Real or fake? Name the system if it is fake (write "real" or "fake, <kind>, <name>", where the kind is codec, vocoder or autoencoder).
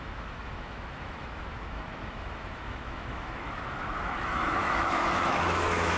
fake, autoencoder, DAC-VAE